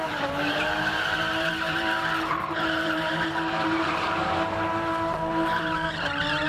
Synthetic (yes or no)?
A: yes